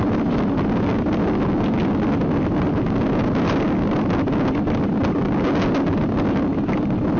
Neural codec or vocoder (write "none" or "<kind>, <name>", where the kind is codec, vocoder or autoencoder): none